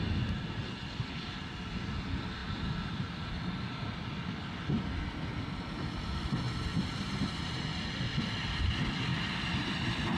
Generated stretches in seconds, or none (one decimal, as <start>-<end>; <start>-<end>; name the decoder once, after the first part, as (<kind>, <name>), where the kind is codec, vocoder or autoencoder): 6.7-7.7 (vocoder, BigVGAN v2)